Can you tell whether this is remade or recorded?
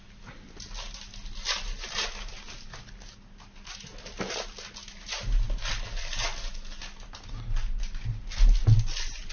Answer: recorded